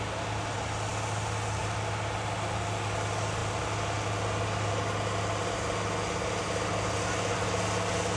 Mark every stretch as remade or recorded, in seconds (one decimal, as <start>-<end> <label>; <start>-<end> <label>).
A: 0.0-8.2 recorded